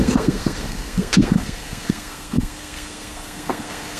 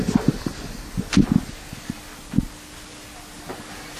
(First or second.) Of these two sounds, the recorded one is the second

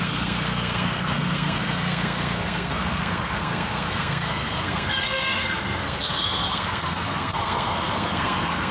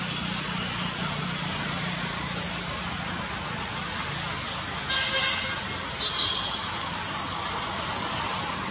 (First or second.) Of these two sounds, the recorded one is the second